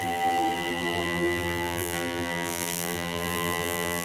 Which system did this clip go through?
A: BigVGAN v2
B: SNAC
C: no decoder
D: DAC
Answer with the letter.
A